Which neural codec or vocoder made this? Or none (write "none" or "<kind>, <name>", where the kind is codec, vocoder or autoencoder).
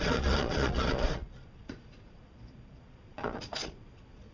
vocoder, Vocos